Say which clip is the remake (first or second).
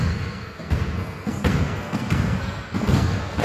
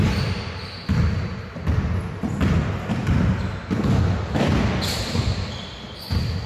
first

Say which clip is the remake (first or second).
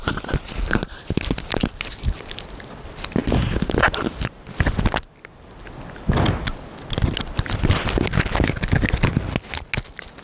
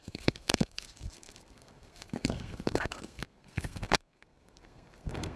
second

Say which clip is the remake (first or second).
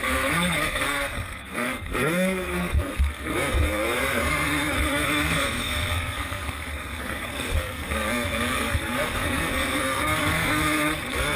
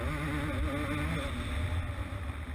first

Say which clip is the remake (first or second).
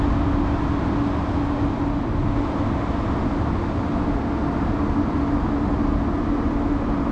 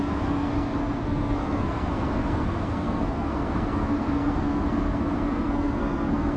second